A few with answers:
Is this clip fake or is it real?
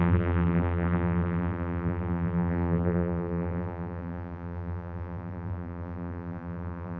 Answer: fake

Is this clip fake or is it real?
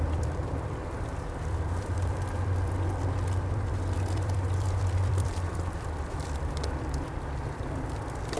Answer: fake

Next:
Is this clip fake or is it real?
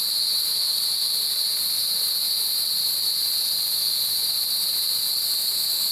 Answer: real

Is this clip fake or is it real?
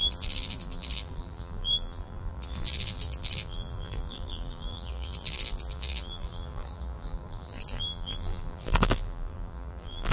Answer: fake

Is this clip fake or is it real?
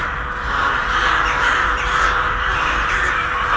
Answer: fake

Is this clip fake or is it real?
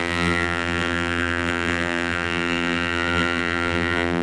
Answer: fake